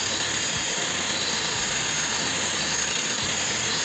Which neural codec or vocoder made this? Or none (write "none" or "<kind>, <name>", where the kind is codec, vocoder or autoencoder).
none